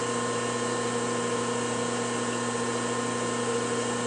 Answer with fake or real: real